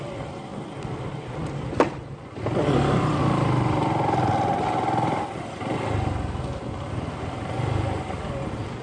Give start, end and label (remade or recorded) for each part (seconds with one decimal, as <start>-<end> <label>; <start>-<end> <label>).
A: 0.0-8.8 recorded